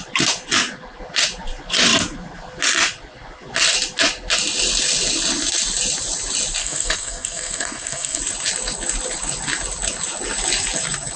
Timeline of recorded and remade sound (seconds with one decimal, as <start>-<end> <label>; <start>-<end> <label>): 0.0-6.6 recorded; 6.6-8.2 remade; 8.2-11.2 recorded